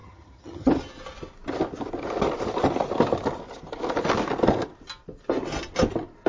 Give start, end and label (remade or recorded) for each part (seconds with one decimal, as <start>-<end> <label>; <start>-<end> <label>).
0.0-0.7 remade; 0.7-6.3 recorded